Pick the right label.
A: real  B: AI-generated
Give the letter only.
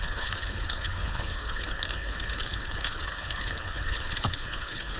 B